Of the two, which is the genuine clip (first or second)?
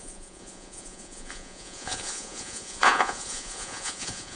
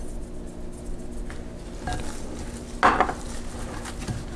second